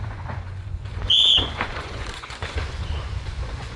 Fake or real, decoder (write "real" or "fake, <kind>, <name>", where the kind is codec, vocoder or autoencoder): fake, vocoder, Vocos